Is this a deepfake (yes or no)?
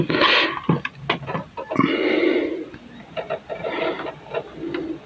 no